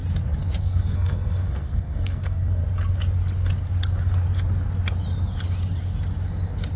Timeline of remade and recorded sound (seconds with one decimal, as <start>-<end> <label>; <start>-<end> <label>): 0.0-0.6 recorded; 0.6-2.6 remade; 2.6-6.8 recorded